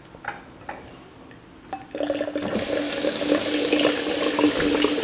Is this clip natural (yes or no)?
yes